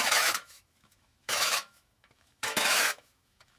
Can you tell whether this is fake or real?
fake